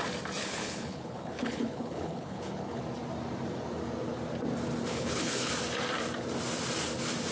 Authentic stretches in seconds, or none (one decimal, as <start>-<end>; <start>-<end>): 0.0-0.4; 2.8-4.9; 5.5-7.3